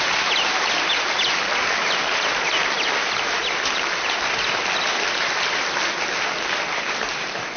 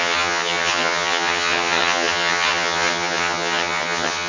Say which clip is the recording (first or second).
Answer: first